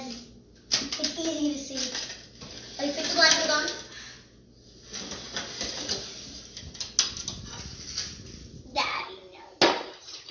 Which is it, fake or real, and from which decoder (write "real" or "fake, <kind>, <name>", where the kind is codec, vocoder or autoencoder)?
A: real